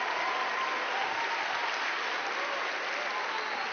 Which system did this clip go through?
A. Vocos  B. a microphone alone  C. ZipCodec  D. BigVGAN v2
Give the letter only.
B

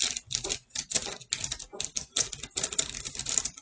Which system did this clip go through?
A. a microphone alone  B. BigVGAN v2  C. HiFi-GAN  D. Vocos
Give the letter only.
A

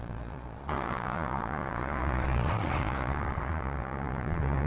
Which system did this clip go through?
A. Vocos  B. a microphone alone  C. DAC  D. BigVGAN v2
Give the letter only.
A